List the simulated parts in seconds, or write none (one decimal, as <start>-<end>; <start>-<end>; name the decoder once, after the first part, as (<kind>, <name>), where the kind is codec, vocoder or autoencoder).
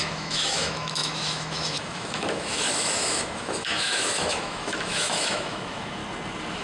0.0-6.0 (autoencoder, DAC-VAE)